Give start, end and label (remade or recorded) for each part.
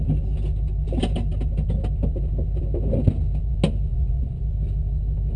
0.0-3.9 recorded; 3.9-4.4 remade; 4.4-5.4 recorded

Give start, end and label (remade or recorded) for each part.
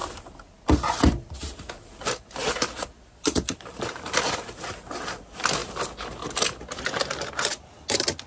0.0-8.3 recorded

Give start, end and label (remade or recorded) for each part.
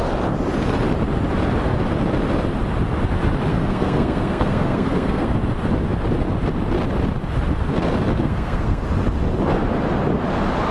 0.0-3.5 recorded; 3.5-5.3 remade; 5.3-8.2 recorded; 8.2-8.8 remade; 8.8-10.7 recorded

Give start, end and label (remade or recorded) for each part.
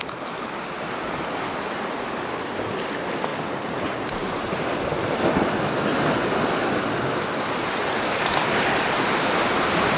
0.0-3.3 recorded; 3.3-5.1 remade; 5.1-10.0 recorded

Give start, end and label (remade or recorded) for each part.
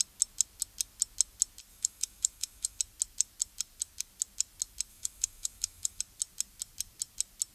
0.0-1.7 recorded; 1.7-2.8 remade; 2.8-4.9 recorded; 4.9-6.0 remade; 6.0-7.5 recorded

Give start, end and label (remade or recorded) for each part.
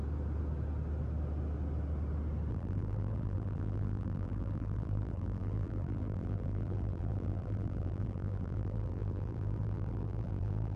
0.0-2.5 recorded; 2.5-10.8 remade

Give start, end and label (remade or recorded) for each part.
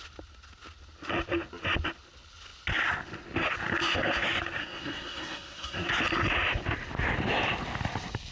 0.0-4.6 recorded; 4.6-5.9 remade; 5.9-8.3 recorded